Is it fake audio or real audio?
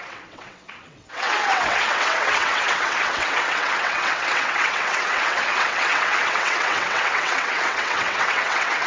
fake